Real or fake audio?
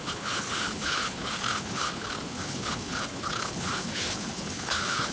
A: fake